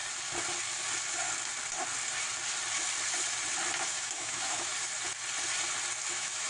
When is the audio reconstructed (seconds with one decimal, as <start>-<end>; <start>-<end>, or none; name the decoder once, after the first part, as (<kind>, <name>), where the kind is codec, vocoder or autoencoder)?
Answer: 3.9-4.7 (autoencoder, DAC-VAE); 6.1-6.5

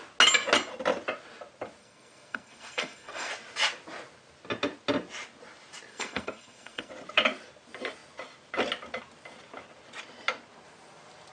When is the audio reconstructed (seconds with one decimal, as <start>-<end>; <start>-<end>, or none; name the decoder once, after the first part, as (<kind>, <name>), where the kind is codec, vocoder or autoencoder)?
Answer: 1.8-3.3 (codec, SNAC); 5.9-6.9

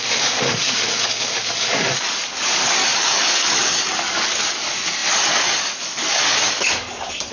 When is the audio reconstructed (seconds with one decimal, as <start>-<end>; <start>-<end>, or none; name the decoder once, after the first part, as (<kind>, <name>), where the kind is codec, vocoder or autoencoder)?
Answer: 0.0-7.3 (codec, DAC)

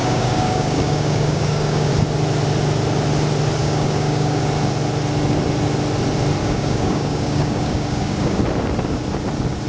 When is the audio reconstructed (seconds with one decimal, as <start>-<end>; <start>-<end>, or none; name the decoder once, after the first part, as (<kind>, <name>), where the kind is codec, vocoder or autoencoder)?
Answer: 0.0-1.9 (codec, DAC); 3.6-4.4; 6.4-8.4